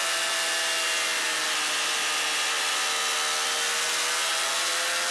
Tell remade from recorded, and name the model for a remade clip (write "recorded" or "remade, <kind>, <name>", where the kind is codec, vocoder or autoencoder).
recorded